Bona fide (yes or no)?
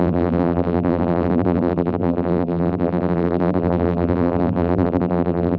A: no